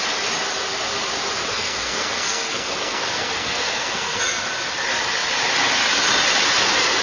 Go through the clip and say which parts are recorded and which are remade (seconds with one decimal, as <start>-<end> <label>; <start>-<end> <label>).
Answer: 0.0-1.5 recorded; 1.5-4.5 remade; 4.5-7.0 recorded